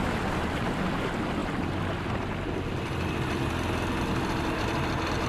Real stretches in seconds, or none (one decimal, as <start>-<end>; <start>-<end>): 0.0-5.3